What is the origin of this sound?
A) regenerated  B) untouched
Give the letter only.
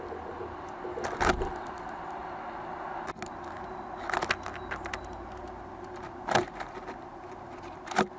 B